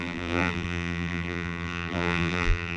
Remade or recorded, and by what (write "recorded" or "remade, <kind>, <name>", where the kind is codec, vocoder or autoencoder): remade, vocoder, BigVGAN v2